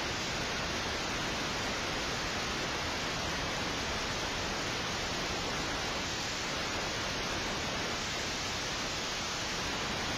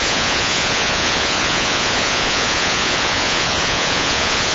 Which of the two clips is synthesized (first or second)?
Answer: second